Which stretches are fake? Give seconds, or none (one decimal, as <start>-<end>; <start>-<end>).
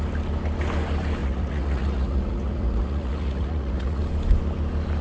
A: 1.2-4.0